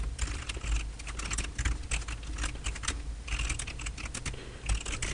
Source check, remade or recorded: recorded